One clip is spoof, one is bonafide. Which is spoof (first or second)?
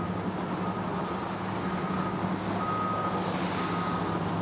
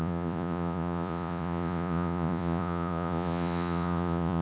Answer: second